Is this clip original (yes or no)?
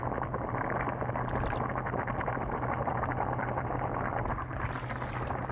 yes